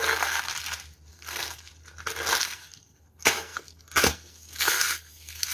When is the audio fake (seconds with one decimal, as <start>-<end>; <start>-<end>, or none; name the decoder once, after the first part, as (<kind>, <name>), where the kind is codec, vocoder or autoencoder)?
0.0-0.5 (codec, SNAC); 1.1-1.7; 2.4-5.5